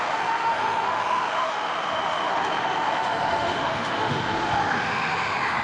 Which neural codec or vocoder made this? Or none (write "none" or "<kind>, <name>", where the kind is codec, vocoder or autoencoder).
autoencoder, DAC-VAE